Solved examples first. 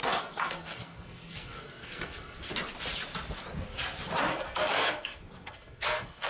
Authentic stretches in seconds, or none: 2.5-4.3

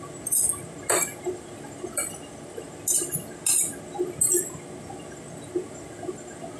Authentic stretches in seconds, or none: 0.0-6.6

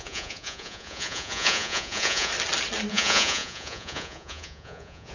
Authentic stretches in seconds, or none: 2.3-2.9

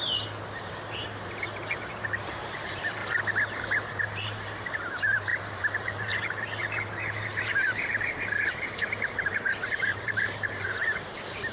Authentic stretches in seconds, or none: 3.0-4.0

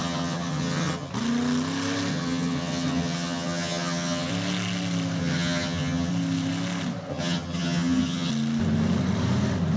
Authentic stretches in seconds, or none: 1.1-2.1; 4.3-5.2; 6.1-7.1; 8.3-9.8

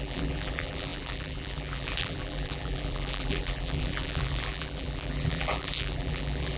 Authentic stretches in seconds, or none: none

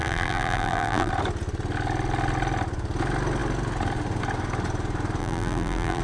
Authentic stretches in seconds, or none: 1.1-5.2